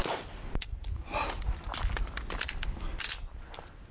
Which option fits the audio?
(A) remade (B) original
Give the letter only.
B